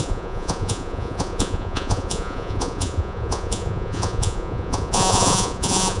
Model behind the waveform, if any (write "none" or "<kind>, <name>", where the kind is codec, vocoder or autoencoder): vocoder, Vocos